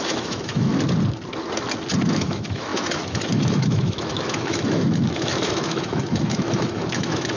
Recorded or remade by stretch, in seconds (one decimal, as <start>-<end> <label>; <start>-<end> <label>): 0.0-0.7 remade; 0.7-2.1 recorded; 2.1-7.4 remade